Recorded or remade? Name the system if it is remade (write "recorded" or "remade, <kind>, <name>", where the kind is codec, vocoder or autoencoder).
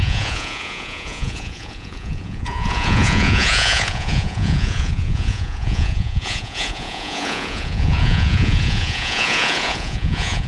remade, vocoder, Vocos